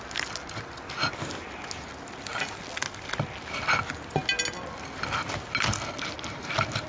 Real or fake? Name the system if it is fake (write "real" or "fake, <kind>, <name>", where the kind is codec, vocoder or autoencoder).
real